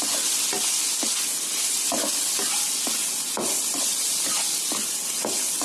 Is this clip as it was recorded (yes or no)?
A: yes